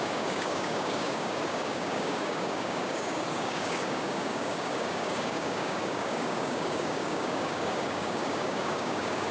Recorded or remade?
remade